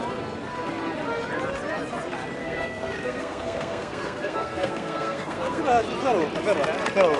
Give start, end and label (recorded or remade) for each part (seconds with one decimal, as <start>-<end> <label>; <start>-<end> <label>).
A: 0.0-2.4 recorded; 2.4-5.6 remade; 5.6-7.2 recorded